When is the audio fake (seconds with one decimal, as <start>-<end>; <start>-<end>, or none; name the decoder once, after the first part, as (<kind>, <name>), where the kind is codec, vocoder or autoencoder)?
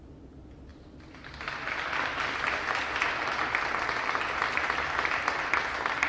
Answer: none